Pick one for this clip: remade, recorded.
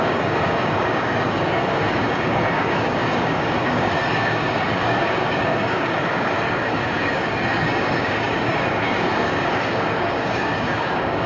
remade